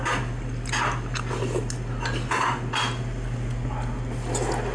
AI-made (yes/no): no